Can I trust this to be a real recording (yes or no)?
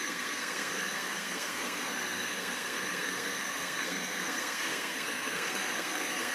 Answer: no